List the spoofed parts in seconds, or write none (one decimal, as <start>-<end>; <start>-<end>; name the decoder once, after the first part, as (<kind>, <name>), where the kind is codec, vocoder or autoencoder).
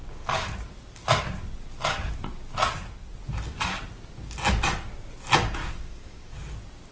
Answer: 5.6-6.5 (codec, DAC)